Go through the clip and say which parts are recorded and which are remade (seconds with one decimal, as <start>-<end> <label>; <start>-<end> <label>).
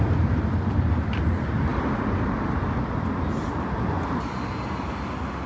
0.0-5.5 recorded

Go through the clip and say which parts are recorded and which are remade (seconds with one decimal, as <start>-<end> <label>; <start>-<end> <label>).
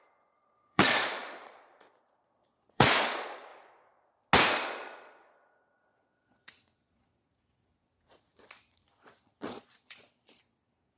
0.0-3.5 remade; 3.5-4.5 recorded; 4.5-11.0 remade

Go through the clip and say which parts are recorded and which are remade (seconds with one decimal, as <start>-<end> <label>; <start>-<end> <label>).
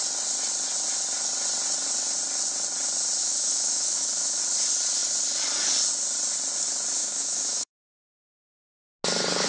0.0-3.2 recorded; 3.2-4.4 remade; 4.4-7.0 recorded; 7.0-7.7 remade; 7.7-9.5 recorded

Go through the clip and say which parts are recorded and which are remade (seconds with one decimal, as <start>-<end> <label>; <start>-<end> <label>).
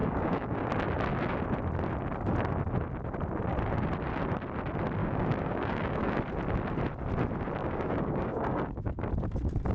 0.0-0.7 remade; 0.7-5.0 recorded; 5.0-6.2 remade; 6.2-7.6 recorded; 7.6-9.1 remade; 9.1-9.7 recorded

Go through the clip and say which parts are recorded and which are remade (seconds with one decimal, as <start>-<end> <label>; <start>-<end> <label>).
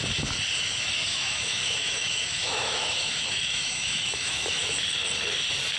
0.0-1.1 recorded; 1.1-4.6 remade; 4.6-5.8 recorded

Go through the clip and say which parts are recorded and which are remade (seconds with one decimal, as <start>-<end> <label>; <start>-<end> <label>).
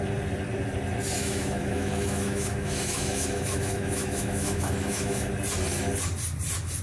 0.0-1.2 recorded; 1.2-5.3 remade; 5.3-6.8 recorded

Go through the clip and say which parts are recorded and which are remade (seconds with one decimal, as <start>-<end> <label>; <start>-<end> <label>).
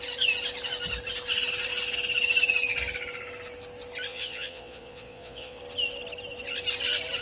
0.0-4.1 recorded; 4.1-5.6 remade; 5.6-7.2 recorded